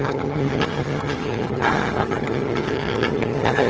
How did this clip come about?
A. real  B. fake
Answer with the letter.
B